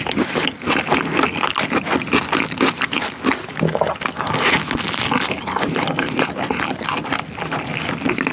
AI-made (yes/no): no